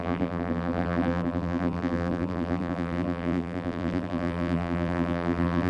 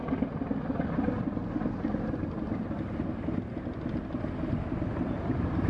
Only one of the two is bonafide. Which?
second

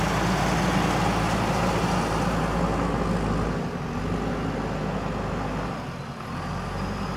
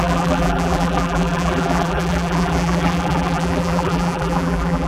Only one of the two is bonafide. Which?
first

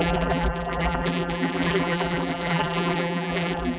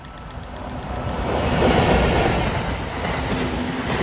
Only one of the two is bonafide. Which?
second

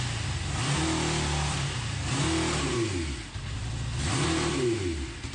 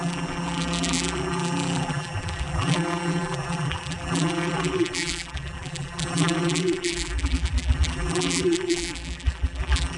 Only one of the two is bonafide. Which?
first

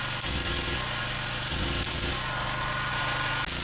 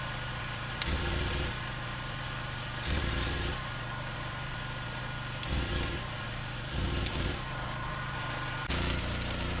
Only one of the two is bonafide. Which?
first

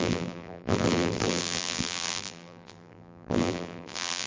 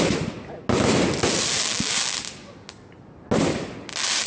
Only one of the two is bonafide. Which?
second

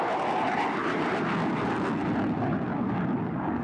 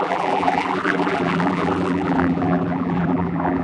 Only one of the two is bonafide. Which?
first